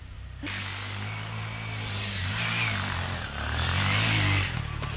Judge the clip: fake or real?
real